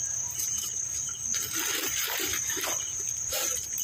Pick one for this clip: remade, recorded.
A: remade